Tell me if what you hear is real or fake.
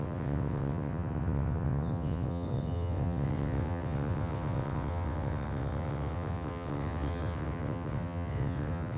fake